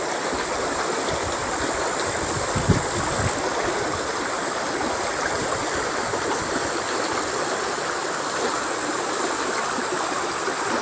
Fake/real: real